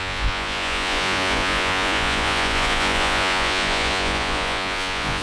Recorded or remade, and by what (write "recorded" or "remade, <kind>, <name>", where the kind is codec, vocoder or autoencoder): remade, vocoder, Vocos